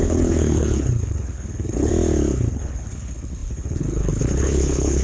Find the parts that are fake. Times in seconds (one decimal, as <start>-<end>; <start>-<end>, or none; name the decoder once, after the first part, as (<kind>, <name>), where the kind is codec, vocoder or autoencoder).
0.0-1.9 (codec, HILCodec); 2.5-5.0